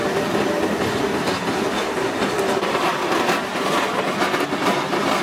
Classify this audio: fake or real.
real